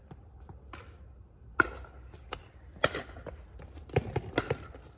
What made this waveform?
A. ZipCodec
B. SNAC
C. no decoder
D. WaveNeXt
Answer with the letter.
C